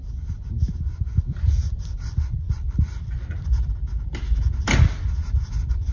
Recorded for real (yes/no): yes